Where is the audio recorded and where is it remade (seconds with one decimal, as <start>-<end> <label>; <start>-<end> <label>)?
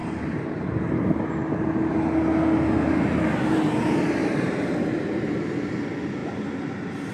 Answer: 0.0-0.5 remade; 0.5-4.2 recorded; 4.2-5.0 remade; 5.0-6.2 recorded; 6.2-7.1 remade